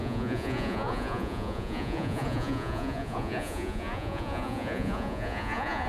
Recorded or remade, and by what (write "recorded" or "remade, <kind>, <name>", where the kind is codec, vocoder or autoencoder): remade, vocoder, Vocos